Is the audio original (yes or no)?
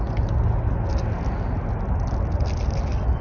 yes